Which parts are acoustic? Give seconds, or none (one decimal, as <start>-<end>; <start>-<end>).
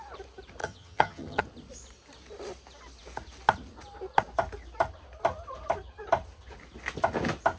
0.0-0.6; 1.4-7.6